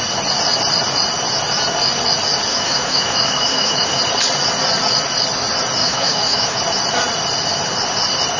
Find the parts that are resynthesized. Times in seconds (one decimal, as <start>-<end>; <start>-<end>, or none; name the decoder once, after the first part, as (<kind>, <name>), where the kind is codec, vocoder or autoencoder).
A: 2.5-4.0 (autoencoder, DAC-VAE); 5.8-6.6